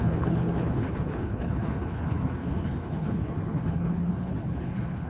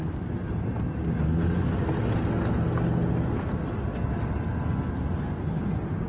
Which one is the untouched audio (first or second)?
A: second